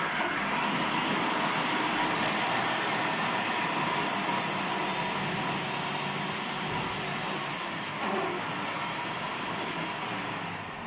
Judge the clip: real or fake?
real